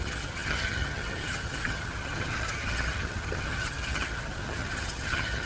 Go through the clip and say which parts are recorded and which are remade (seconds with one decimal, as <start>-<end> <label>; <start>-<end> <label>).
0.0-5.5 remade